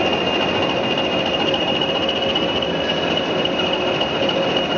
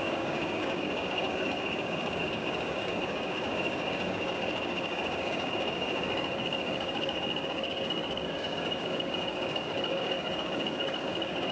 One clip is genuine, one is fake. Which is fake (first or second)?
second